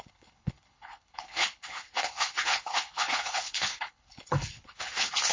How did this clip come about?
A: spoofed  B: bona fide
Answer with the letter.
A